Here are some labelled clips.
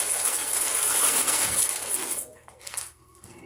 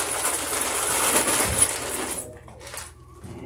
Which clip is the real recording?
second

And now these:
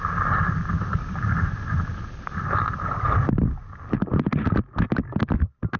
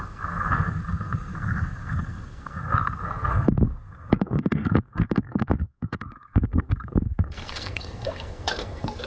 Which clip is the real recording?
first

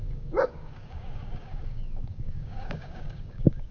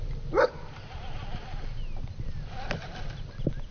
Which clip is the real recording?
second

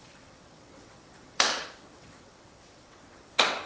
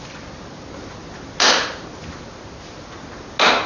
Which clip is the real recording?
second